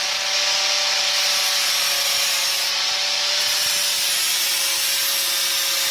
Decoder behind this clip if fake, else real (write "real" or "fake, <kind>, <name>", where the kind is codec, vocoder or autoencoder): real